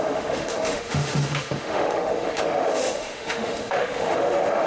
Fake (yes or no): yes